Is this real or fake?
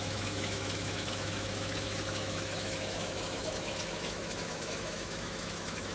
fake